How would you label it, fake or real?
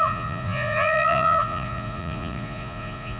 fake